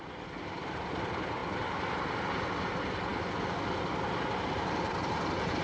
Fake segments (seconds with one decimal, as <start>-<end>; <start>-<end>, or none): none